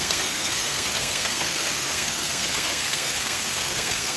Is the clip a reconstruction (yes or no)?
yes